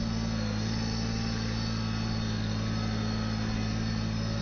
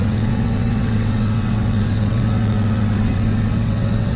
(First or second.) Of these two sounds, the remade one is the second